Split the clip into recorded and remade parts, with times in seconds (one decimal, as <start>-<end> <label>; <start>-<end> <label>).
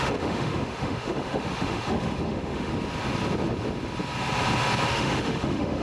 0.0-2.7 remade; 2.7-4.9 recorded; 4.9-5.8 remade